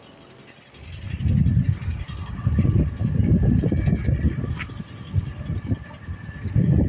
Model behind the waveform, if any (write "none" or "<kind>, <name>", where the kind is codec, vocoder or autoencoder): none